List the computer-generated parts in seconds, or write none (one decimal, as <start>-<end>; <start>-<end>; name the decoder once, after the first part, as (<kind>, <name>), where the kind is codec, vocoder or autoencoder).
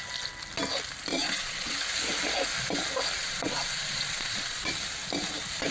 1.1-1.7 (vocoder, Vocos); 3.2-4.7